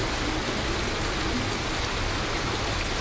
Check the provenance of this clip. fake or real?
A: real